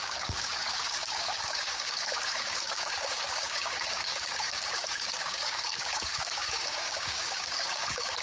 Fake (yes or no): yes